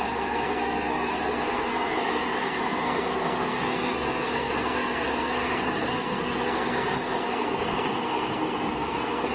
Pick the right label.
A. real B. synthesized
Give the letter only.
B